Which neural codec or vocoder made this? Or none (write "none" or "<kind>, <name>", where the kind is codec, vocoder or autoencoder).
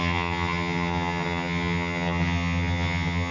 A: vocoder, HiFi-GAN